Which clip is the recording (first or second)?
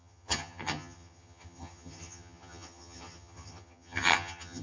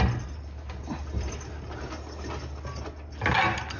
second